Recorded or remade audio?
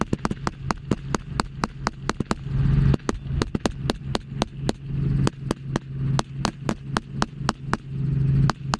recorded